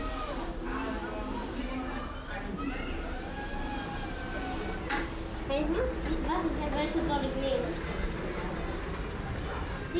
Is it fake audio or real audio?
real